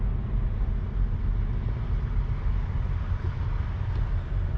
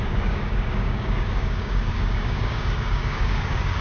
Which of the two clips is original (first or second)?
first